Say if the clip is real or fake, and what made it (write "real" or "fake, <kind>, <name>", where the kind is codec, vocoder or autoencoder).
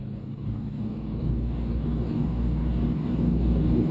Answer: fake, codec, DAC